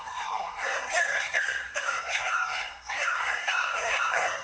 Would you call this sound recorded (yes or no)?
no